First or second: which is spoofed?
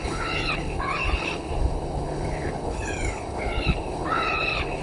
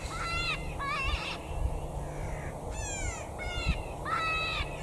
first